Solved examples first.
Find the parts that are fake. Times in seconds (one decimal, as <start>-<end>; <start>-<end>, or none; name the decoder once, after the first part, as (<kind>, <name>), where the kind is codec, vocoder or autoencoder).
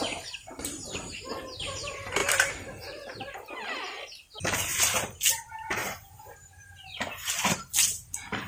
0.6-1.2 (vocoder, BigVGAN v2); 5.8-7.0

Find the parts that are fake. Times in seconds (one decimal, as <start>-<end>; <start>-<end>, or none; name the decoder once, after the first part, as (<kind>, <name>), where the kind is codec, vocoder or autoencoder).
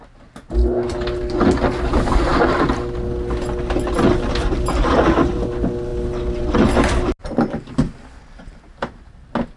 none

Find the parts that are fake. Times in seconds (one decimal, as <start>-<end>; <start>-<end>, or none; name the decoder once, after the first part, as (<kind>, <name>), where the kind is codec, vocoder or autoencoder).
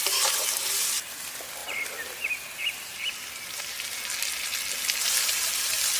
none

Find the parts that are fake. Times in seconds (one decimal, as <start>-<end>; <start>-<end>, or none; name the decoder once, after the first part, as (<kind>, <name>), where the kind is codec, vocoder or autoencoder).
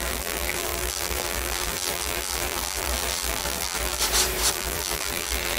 0.0-4.0 (vocoder, BigVGAN v2); 4.5-5.6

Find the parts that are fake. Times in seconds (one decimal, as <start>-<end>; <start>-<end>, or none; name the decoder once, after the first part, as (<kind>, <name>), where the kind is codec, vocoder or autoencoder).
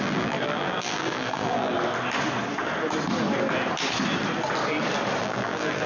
0.0-1.7 (vocoder, BigVGAN v2); 5.2-5.9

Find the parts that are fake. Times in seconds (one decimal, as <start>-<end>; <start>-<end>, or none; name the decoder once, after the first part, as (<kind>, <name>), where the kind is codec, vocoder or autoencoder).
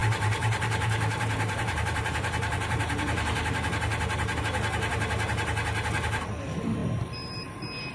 0.0-3.7 (vocoder, BigVGAN v2)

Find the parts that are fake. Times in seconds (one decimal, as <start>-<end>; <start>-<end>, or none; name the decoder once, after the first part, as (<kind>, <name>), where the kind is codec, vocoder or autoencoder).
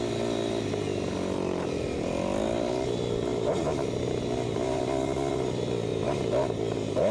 3.3-4.8 (vocoder, BigVGAN v2); 5.9-7.1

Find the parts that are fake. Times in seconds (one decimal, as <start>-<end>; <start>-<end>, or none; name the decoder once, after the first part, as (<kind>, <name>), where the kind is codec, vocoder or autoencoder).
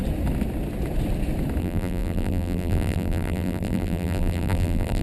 1.6-5.0 (vocoder, BigVGAN v2)